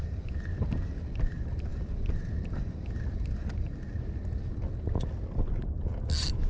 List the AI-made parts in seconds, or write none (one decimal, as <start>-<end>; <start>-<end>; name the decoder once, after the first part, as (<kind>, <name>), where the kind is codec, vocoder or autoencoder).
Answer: none